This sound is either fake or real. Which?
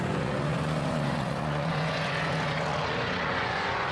fake